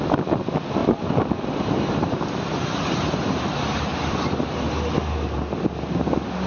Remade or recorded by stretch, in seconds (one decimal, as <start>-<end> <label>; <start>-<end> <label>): 0.0-0.8 recorded; 0.8-4.7 remade; 4.7-6.5 recorded